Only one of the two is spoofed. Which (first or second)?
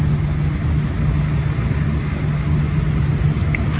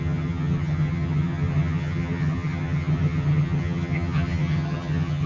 second